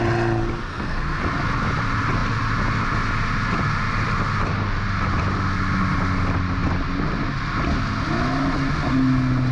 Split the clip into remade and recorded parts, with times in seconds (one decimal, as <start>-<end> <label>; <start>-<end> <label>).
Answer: 0.0-0.7 recorded; 0.7-1.2 remade; 1.2-9.5 recorded